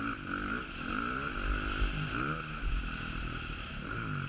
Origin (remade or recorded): recorded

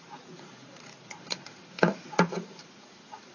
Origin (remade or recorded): remade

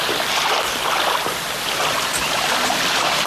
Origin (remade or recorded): recorded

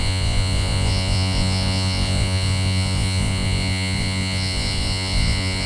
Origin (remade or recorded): remade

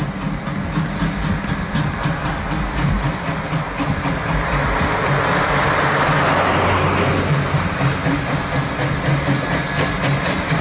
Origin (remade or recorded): recorded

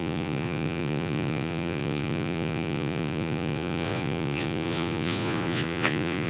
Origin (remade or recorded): remade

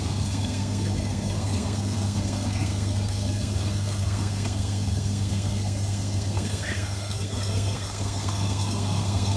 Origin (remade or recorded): remade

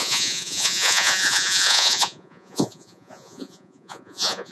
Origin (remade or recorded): remade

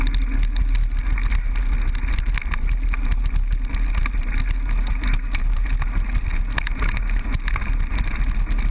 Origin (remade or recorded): recorded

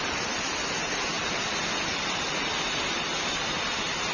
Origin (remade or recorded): recorded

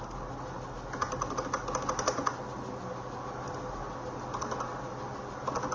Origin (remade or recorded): recorded